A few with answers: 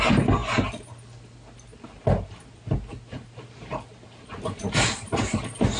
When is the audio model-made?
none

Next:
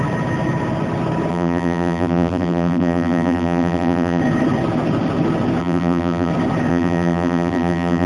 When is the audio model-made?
1.3-4.2 (vocoder, BigVGAN v2); 5.6-6.3; 6.7-8.1

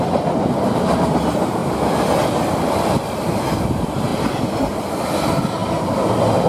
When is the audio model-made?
4.1-5.0 (vocoder, BigVGAN v2); 5.6-6.1

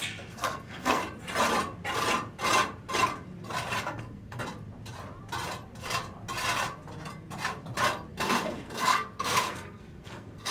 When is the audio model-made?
0.0-1.0 (codec, SNAC); 3.8-4.4; 8.1-10.5

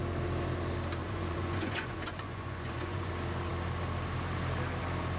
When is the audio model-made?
1.0-3.1 (vocoder, Vocos)

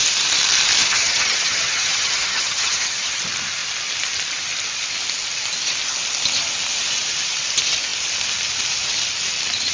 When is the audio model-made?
0.8-3.2 (vocoder, HiFi-GAN)

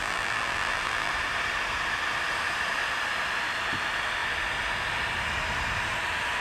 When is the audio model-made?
0.0-1.1 (vocoder, BigVGAN v2)

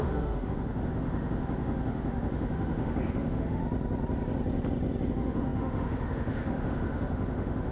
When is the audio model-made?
0.0-3.6 (autoencoder, DAC-VAE); 5.1-7.7